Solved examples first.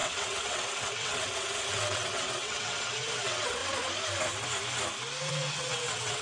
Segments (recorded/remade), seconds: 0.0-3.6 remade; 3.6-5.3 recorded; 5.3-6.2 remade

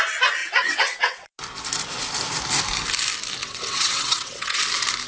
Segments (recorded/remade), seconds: 0.0-0.4 recorded; 0.4-1.3 remade; 1.3-3.4 recorded; 3.4-4.6 remade; 4.6-5.1 recorded

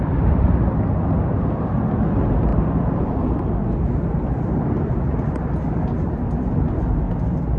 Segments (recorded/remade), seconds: 0.0-7.6 recorded

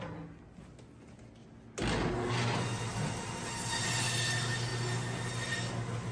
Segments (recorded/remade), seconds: 0.0-6.1 recorded

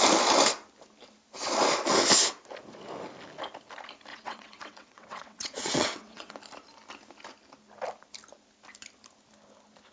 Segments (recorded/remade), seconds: 0.0-4.1 recorded; 4.1-6.3 remade; 6.3-9.9 recorded

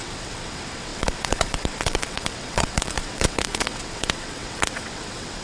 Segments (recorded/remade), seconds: 0.0-5.4 remade

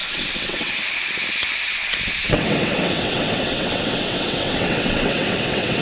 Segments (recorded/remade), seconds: 0.0-0.8 remade; 0.8-2.2 recorded; 2.2-5.8 remade